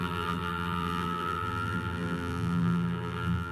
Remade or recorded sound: remade